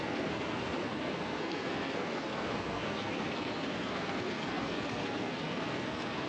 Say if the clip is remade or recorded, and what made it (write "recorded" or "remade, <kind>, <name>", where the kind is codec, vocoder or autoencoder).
remade, codec, SNAC